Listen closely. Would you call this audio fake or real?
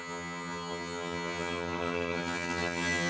fake